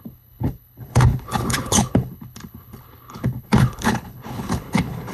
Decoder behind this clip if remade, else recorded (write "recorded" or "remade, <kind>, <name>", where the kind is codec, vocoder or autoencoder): remade, codec, HILCodec